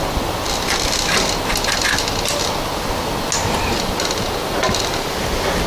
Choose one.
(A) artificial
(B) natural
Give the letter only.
B